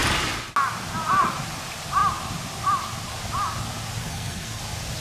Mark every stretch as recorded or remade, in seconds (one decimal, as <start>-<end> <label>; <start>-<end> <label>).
0.0-4.0 recorded; 4.0-4.6 remade; 4.6-5.0 recorded